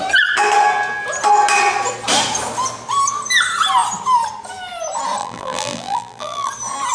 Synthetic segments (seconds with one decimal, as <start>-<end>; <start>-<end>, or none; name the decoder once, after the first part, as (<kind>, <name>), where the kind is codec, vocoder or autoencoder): 5.2-6.5 (vocoder, BigVGAN v2)